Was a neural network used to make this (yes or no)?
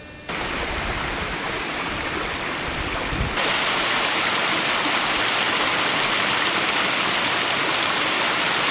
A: no